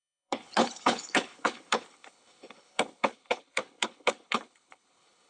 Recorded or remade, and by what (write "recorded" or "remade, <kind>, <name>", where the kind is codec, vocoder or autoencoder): remade, codec, HILCodec